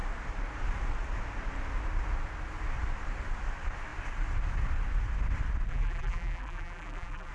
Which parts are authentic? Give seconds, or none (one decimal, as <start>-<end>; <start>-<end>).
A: 0.0-5.7